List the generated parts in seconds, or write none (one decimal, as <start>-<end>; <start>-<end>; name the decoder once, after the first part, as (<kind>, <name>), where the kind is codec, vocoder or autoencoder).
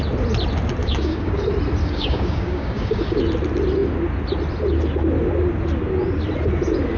0.8-1.4 (codec, DAC); 1.8-3.2